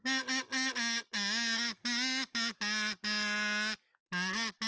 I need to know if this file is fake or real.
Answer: real